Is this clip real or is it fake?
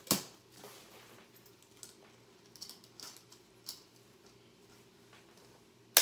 real